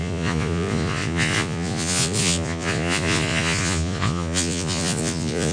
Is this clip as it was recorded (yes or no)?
no